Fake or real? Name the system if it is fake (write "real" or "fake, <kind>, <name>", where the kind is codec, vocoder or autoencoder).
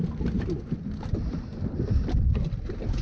real